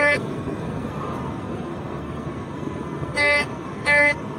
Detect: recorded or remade remade